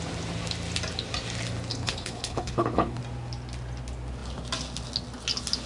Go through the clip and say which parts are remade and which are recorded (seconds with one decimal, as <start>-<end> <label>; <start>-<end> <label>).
0.0-1.7 recorded; 1.7-3.0 remade; 3.0-5.7 recorded